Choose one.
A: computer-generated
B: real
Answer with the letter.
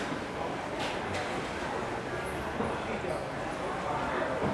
B